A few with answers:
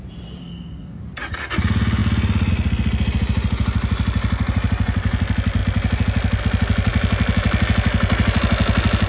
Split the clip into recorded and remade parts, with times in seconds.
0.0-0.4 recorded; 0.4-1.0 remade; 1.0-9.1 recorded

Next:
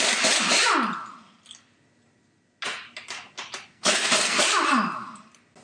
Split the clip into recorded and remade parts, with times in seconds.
0.0-3.7 recorded; 3.7-4.4 remade; 4.4-5.6 recorded

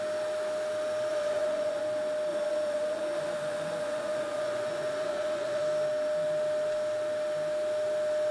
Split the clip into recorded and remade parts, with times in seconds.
0.0-1.1 recorded; 1.1-1.8 remade; 1.8-2.3 recorded; 2.3-5.6 remade; 5.6-8.3 recorded

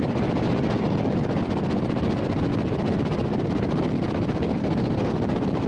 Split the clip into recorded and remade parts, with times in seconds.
0.0-4.6 recorded; 4.6-5.1 remade; 5.1-5.7 recorded

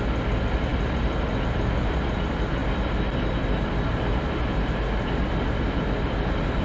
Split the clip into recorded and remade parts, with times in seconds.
0.0-6.6 recorded

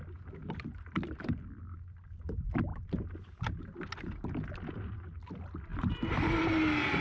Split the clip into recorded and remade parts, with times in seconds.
0.0-0.4 recorded; 0.4-1.6 remade; 1.6-2.7 recorded; 2.7-3.6 remade; 3.6-5.7 recorded; 5.7-6.4 remade; 6.4-7.0 recorded

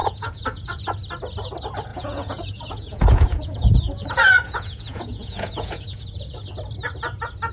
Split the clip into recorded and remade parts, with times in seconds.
0.0-0.8 remade; 0.8-1.9 recorded; 1.9-6.4 remade; 6.4-7.5 recorded